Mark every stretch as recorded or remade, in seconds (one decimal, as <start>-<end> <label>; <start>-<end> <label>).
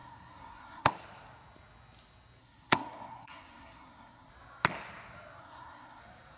0.0-0.9 remade; 0.9-2.4 recorded; 2.4-4.3 remade; 4.3-5.4 recorded; 5.4-6.0 remade; 6.0-6.4 recorded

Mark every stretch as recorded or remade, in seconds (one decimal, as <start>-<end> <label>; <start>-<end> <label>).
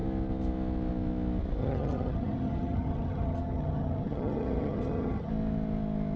0.0-1.6 recorded; 1.6-5.3 remade; 5.3-6.2 recorded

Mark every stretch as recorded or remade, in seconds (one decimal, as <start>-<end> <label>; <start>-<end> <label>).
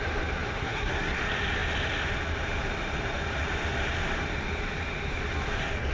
0.0-0.6 recorded; 0.6-1.2 remade; 1.2-5.9 recorded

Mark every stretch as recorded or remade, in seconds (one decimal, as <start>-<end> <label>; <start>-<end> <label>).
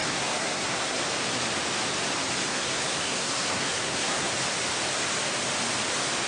0.0-1.0 remade; 1.0-2.4 recorded; 2.4-4.3 remade; 4.3-6.3 recorded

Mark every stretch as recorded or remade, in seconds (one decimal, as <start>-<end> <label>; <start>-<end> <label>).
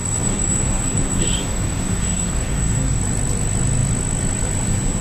0.0-3.0 remade; 3.0-5.0 recorded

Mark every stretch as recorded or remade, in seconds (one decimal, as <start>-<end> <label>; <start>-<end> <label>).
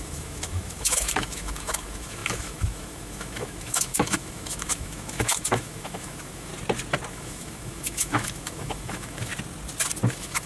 0.0-6.5 remade; 6.5-7.1 recorded; 7.1-9.3 remade; 9.3-10.1 recorded; 10.1-10.5 remade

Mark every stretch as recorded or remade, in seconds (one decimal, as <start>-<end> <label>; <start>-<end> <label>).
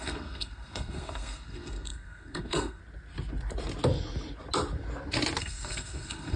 0.0-2.8 remade; 2.8-5.4 recorded; 5.4-6.4 remade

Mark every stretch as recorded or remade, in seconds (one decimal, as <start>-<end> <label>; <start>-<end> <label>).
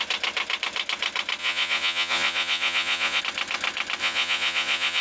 0.0-1.4 recorded; 1.4-3.2 remade; 3.2-4.0 recorded; 4.0-5.0 remade